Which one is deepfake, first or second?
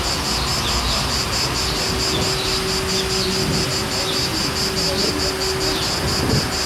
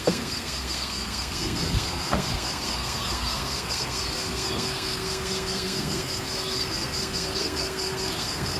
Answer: second